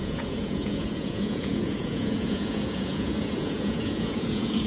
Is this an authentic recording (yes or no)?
no